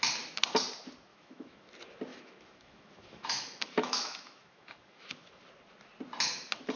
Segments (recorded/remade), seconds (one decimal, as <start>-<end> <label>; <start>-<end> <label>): 0.0-1.1 recorded; 1.1-1.7 remade; 1.7-2.1 recorded; 2.1-5.4 remade; 5.4-6.8 recorded